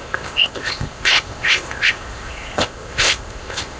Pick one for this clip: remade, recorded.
remade